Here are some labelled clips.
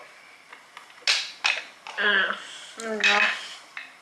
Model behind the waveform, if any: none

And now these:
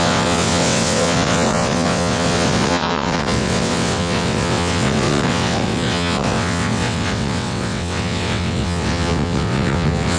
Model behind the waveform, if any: vocoder, WaveNeXt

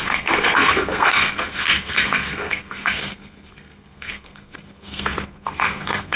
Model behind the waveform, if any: codec, SNAC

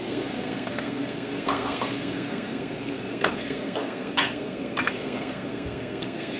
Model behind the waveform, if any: codec, SNAC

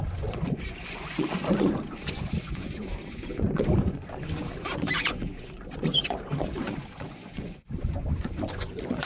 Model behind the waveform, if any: vocoder, Vocos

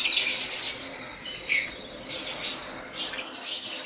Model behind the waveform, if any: none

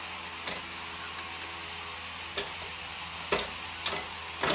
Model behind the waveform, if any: none